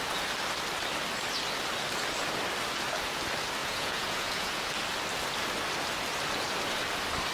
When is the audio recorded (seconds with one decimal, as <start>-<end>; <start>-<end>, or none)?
0.0-3.6; 4.7-7.3